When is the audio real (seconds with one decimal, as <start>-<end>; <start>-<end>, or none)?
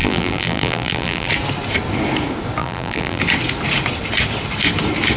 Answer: 1.3-2.6; 3.2-5.2